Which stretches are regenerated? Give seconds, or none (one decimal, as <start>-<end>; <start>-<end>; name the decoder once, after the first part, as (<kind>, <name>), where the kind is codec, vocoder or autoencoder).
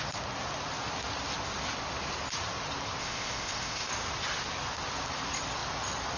3.0-3.9 (codec, ZipCodec)